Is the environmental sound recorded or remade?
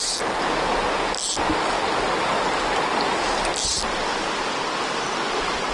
recorded